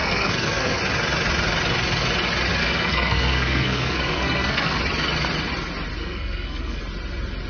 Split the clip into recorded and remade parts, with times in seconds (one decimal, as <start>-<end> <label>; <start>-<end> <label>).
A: 0.0-0.8 remade; 0.8-2.6 recorded; 2.6-4.8 remade; 4.8-6.0 recorded; 6.0-6.8 remade; 6.8-7.5 recorded